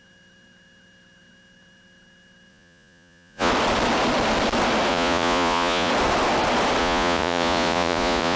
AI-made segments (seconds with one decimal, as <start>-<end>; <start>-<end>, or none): 2.5-3.5; 4.9-5.9; 6.8-8.4